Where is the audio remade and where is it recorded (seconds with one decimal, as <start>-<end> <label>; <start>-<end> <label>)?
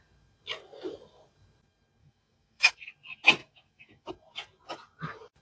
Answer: 0.0-2.0 recorded; 2.0-2.7 remade; 2.7-3.4 recorded; 3.4-4.1 remade; 4.1-5.4 recorded